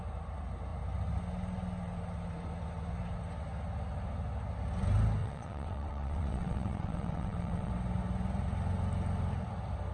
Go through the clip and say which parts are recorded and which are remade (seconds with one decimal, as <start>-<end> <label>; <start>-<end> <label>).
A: 0.0-5.2 recorded; 5.2-7.7 remade; 7.7-9.9 recorded